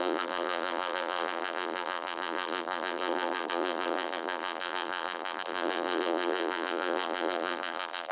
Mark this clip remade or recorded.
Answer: remade